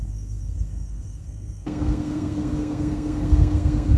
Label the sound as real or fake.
fake